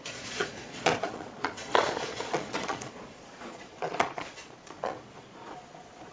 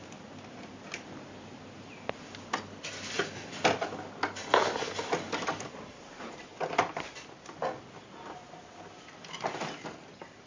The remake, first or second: first